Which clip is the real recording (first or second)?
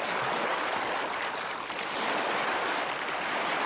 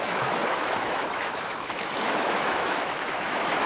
first